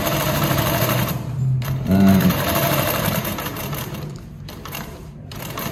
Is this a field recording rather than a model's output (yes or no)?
no